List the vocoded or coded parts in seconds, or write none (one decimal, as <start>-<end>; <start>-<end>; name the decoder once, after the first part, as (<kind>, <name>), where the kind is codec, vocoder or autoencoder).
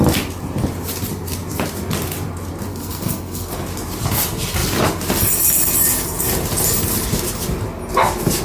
2.7-3.5 (codec, SNAC)